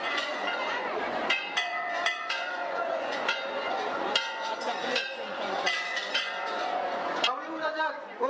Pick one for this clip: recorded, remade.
remade